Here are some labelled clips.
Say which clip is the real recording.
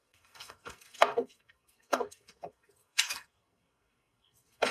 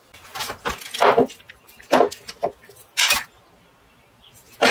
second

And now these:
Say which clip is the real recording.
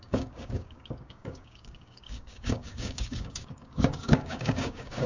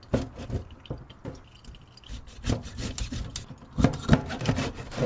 second